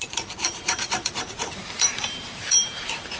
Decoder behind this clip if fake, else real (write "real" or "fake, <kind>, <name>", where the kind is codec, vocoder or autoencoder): fake, vocoder, BigVGAN v2